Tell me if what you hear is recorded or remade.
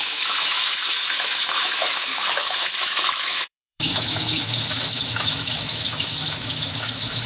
remade